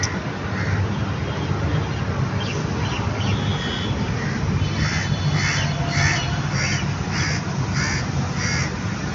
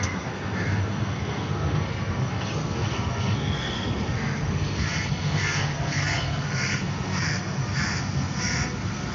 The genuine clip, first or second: first